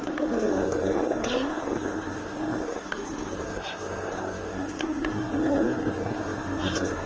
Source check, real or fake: fake